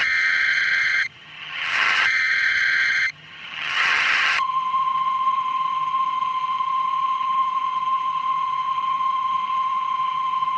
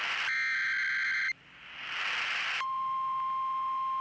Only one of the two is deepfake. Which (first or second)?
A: first